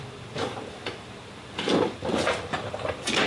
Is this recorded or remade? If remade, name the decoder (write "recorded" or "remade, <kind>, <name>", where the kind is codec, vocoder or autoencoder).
remade, vocoder, BigVGAN v2